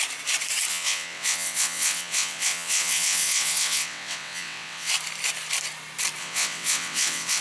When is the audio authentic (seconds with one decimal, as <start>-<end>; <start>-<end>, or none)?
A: 0.0-0.7; 4.9-6.2